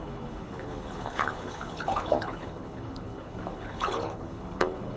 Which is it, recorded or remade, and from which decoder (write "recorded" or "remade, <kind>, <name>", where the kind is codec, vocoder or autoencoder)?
remade, codec, HILCodec